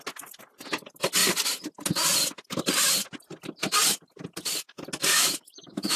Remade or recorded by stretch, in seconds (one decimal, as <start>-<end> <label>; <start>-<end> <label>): 0.0-5.1 recorded; 5.1-6.0 remade